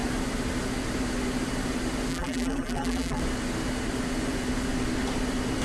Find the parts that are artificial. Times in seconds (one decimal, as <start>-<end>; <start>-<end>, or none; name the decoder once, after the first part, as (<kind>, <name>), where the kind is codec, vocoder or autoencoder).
2.1-3.2 (vocoder, BigVGAN v2)